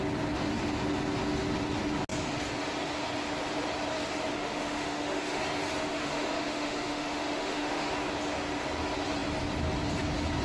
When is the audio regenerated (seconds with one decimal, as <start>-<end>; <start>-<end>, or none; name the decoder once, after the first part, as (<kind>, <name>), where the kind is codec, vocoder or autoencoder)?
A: 4.3-5.4 (autoencoder, DAC-VAE); 5.9-7.9